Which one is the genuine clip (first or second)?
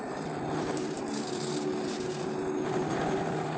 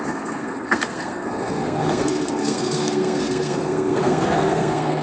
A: first